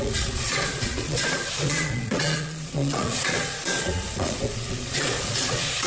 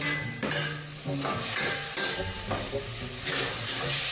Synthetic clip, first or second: first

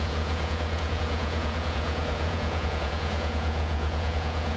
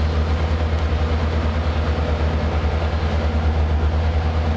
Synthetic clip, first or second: first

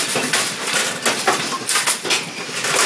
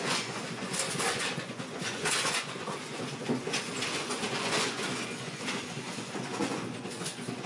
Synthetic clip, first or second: second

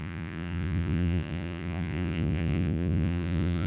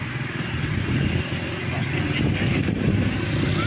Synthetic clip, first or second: first